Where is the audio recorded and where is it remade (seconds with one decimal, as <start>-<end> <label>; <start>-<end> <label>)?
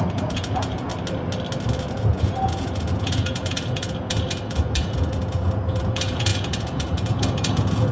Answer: 0.0-0.9 remade; 0.9-1.9 recorded; 1.9-7.9 remade